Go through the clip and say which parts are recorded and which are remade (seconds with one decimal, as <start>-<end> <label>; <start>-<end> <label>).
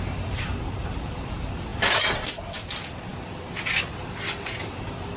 0.0-5.2 recorded